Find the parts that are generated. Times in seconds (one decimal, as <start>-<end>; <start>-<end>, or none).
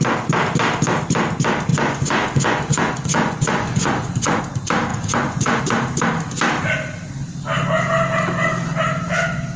1.7-4.4; 4.9-5.6